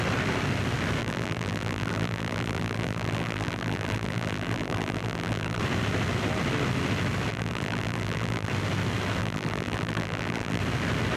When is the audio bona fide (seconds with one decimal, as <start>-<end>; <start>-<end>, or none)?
0.0-1.0; 5.6-7.3; 8.5-9.2; 10.6-11.2